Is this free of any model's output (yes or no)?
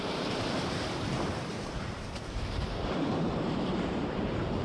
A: no